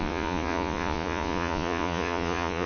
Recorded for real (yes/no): no